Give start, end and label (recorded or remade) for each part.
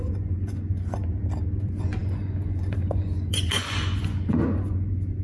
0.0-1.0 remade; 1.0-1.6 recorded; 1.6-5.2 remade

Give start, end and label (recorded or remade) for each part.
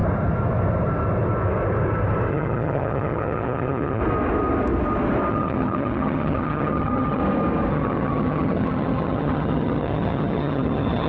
0.0-2.3 recorded; 2.3-4.0 remade; 4.0-5.3 recorded; 5.3-7.2 remade; 7.2-7.7 recorded; 7.7-11.1 remade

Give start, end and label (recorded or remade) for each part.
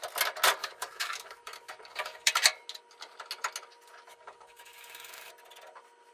0.0-0.6 recorded; 0.6-2.3 remade; 2.3-4.1 recorded; 4.1-5.3 remade; 5.3-6.1 recorded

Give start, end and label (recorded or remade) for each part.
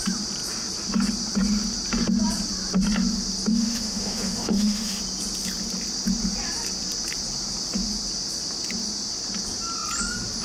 0.0-3.5 recorded; 3.5-5.0 remade; 5.0-10.4 recorded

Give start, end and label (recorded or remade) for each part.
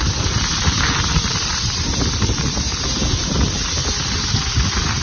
0.0-5.0 recorded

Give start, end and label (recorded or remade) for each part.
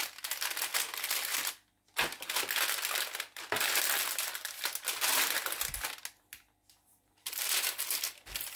0.0-6.9 recorded; 6.9-7.8 remade; 7.8-8.6 recorded